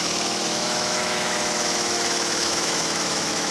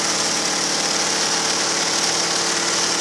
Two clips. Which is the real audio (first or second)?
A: second